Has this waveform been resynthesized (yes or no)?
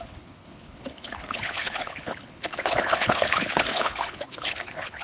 yes